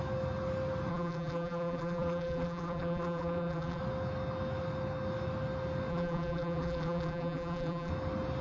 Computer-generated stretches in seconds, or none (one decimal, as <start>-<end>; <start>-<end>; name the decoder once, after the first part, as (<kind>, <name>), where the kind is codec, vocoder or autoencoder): 0.9-3.8 (vocoder, BigVGAN v2); 5.9-7.9